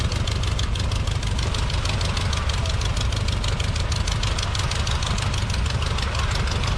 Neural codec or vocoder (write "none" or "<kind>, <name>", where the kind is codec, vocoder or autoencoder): none